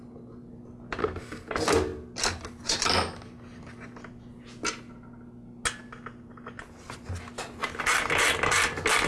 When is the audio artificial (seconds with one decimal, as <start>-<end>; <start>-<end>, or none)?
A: 1.0-1.5